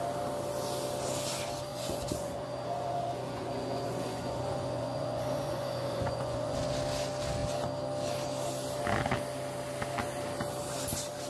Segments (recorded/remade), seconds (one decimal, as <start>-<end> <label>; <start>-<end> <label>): 0.0-1.7 recorded; 1.7-6.7 remade; 6.7-11.3 recorded